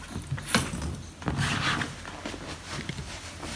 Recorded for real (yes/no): yes